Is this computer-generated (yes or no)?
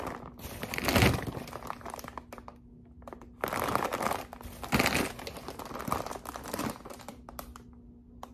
no